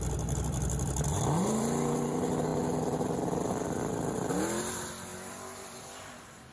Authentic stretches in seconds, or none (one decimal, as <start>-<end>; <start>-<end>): 2.5-3.5